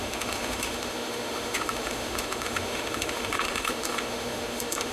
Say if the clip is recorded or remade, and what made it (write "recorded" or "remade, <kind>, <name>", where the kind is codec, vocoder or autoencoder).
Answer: remade, autoencoder, DAC-VAE